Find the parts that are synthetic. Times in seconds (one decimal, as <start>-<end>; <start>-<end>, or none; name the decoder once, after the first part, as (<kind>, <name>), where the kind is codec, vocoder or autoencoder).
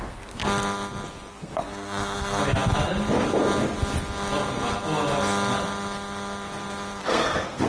0.0-0.4 (codec, SNAC); 1.3-2.4; 7.0-7.7